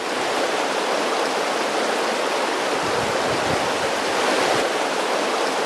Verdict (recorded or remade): recorded